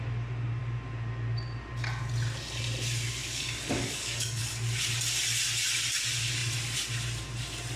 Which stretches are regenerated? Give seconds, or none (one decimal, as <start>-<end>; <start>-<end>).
3.2-4.4